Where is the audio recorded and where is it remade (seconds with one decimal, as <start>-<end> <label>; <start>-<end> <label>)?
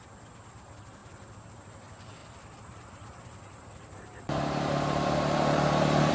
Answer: 0.0-2.2 recorded; 2.2-6.1 remade